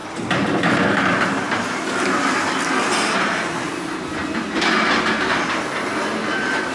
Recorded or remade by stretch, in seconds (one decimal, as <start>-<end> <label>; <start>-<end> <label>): 0.0-2.7 remade; 2.7-4.2 recorded; 4.2-6.7 remade